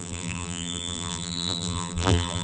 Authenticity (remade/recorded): remade